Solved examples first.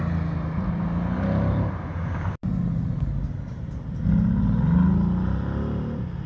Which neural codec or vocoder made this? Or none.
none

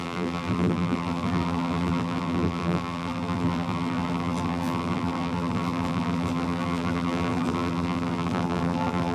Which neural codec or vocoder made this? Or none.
vocoder, BigVGAN v2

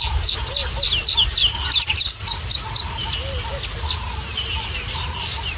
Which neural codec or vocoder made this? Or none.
none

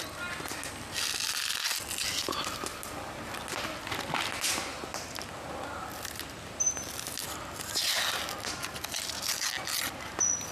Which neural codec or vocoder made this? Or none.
none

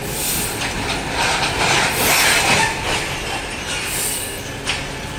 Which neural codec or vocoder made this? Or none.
none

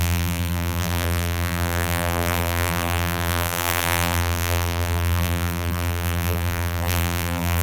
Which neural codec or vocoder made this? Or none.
vocoder, BigVGAN v2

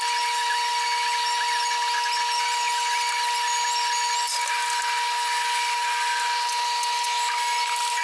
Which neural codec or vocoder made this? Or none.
none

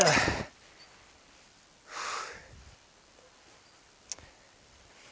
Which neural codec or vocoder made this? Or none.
none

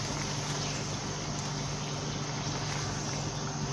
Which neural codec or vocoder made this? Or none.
none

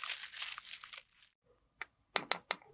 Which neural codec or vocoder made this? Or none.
none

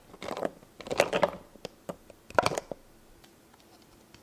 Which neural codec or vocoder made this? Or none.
none